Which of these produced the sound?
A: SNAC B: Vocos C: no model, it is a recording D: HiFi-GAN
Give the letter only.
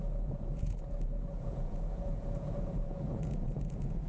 B